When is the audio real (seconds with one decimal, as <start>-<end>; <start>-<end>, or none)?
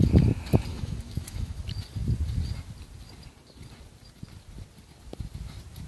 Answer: 0.0-0.7; 1.6-5.9